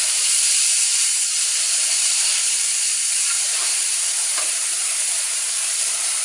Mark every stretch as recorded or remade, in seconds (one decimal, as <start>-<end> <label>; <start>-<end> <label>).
0.0-6.2 remade